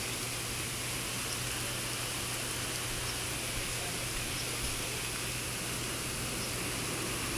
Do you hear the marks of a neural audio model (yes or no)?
no